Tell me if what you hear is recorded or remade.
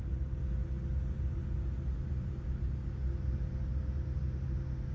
recorded